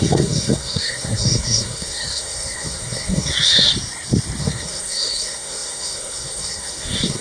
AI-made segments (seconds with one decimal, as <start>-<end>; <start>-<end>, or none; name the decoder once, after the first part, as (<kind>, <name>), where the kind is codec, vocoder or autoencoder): 0.0-3.7 (codec, SNAC); 4.4-7.2